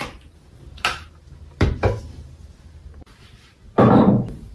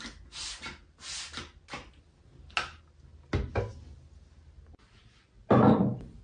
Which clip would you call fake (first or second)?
first